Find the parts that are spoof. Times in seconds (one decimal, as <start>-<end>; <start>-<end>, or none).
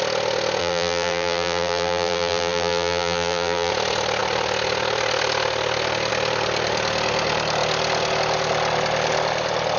0.6-3.7